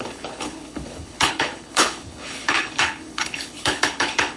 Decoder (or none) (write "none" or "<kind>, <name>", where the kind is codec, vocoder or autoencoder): codec, HILCodec